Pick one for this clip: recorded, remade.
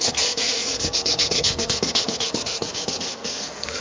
remade